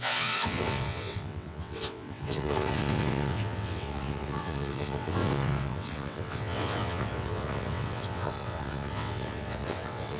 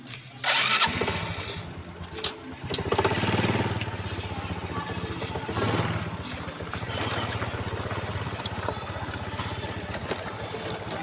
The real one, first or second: second